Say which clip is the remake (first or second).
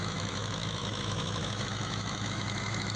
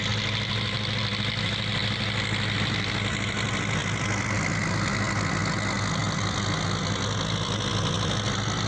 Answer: first